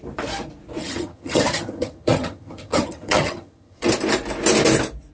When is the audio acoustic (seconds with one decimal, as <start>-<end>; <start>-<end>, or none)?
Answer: 0.0-0.8; 3.9-5.1